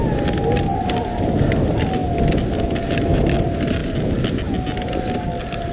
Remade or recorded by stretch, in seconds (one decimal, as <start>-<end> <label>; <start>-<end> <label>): 0.0-5.7 recorded